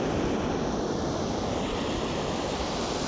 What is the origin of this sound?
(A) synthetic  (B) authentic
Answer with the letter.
B